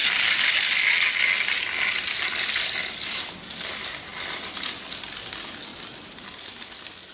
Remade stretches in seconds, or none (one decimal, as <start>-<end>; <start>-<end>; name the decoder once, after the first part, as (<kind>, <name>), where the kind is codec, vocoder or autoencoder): none